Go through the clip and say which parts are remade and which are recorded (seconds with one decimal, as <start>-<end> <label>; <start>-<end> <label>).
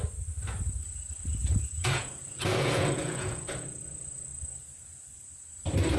0.0-1.4 recorded; 1.4-3.8 remade; 3.8-6.0 recorded